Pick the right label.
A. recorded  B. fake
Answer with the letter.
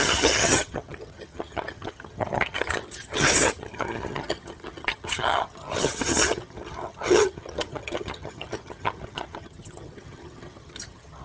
B